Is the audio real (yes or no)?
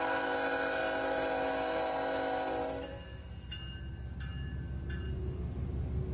yes